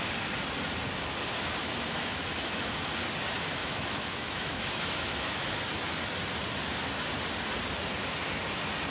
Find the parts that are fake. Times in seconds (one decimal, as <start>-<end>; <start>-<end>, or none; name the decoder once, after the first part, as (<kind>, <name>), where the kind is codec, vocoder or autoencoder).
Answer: 1.6-2.7 (autoencoder, DAC-VAE); 3.6-5.5